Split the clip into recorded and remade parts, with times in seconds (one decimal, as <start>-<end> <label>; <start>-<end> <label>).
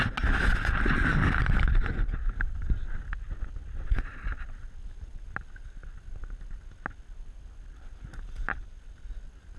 0.0-9.6 recorded